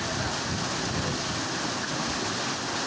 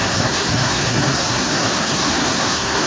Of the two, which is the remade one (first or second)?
second